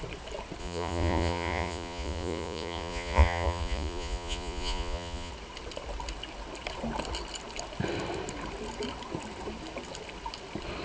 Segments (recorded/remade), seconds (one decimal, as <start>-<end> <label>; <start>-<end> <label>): 0.0-0.6 recorded; 0.6-5.3 remade; 5.3-10.8 recorded